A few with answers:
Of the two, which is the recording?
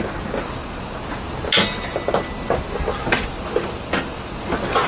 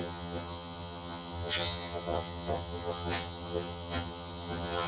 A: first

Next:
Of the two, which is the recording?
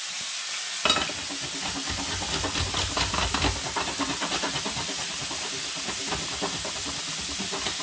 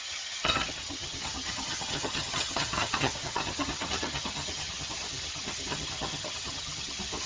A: first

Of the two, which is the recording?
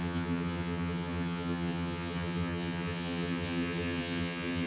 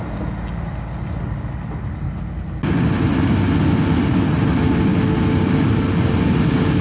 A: second